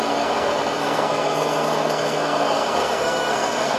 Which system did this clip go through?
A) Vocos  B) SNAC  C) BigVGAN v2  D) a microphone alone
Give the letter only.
B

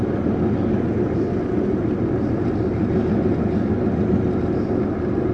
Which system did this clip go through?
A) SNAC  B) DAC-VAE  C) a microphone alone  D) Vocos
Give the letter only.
C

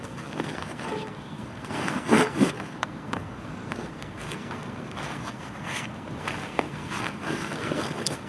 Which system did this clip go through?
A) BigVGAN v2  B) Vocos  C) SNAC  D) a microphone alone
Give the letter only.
C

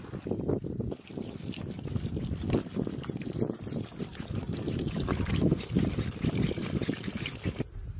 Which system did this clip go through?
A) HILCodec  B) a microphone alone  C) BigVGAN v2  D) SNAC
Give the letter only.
B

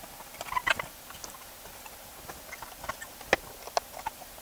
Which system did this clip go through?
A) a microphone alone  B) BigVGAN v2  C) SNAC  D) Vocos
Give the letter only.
A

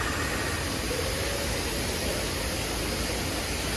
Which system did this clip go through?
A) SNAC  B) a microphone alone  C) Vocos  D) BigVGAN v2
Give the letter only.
B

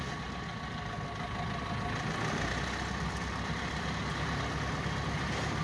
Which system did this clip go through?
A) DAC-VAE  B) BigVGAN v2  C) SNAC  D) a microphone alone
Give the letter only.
D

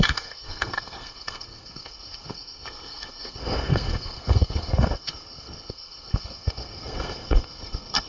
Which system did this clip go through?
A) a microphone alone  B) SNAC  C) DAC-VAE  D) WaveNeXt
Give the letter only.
B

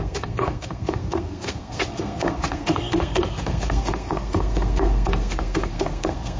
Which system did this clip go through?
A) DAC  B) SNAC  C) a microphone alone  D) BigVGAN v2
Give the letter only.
B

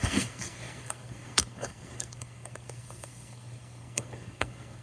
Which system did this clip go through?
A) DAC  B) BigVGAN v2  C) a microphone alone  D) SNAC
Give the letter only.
D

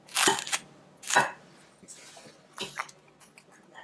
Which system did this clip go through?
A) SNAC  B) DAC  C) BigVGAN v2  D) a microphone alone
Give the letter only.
D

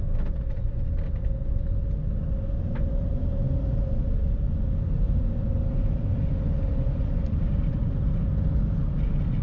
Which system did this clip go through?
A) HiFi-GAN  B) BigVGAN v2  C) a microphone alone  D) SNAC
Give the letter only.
C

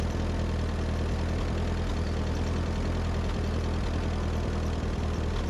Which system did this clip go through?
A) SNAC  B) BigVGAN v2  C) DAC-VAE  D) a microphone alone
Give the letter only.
D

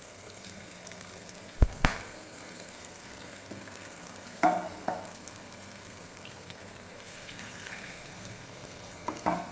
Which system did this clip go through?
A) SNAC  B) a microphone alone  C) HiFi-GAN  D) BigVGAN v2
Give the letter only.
A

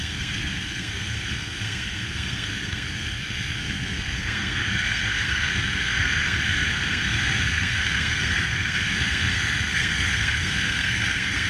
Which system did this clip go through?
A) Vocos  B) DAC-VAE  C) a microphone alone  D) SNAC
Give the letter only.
D